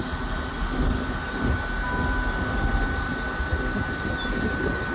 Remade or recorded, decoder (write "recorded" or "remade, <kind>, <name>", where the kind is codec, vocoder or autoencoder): recorded